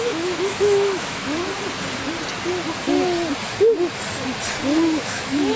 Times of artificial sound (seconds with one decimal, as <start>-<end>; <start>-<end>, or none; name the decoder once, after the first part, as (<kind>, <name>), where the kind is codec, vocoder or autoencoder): 0.0-1.4 (autoencoder, DAC-VAE); 4.8-5.6